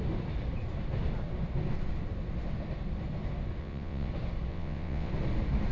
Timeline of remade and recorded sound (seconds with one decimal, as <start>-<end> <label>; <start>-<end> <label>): 0.0-3.6 recorded; 3.6-4.1 remade; 4.1-4.5 recorded; 4.5-5.1 remade; 5.1-5.7 recorded